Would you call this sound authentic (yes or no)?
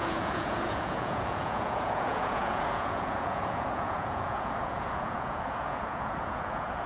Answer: no